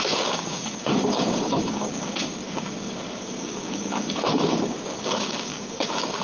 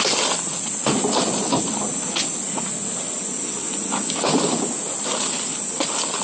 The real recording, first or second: second